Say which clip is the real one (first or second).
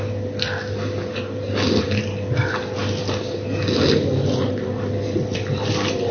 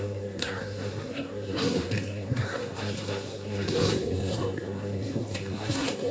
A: first